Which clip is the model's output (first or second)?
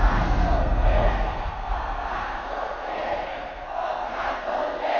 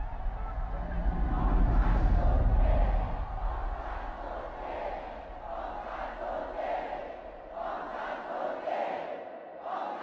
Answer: first